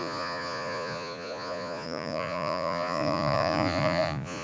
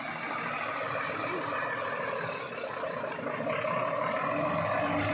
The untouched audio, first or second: second